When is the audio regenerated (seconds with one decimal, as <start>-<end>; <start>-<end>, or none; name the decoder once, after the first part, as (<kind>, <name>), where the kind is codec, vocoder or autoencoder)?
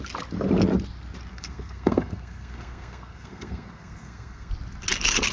1.3-4.5 (codec, SNAC)